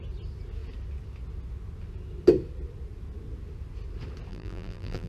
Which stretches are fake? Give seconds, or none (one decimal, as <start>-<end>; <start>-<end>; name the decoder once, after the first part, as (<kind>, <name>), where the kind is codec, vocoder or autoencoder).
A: 4.3-5.1 (vocoder, BigVGAN v2)